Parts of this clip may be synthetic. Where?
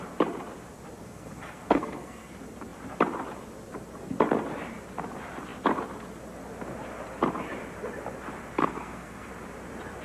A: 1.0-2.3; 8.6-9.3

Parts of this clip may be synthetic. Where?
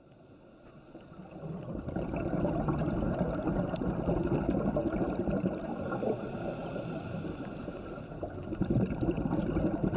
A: none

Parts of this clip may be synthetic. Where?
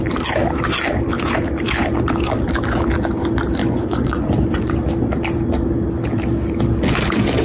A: 3.6-4.7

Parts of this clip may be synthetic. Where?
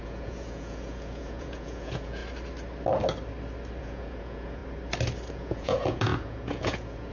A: 0.0-2.2; 3.8-4.6; 5.3-7.1